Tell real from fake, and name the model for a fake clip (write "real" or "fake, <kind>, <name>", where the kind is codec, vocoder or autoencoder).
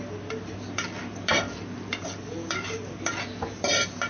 real